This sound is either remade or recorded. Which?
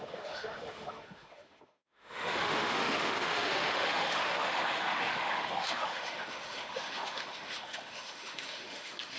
remade